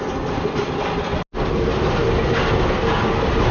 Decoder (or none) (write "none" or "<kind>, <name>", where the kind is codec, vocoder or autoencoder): none